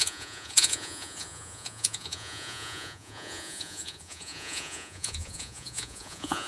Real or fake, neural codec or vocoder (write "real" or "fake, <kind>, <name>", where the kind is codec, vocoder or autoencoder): fake, vocoder, Vocos